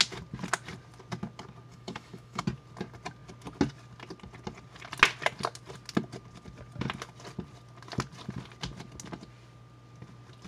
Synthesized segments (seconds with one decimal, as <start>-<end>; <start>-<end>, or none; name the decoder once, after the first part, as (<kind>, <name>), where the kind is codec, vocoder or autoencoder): 1.7-2.4 (autoencoder, DAC-VAE)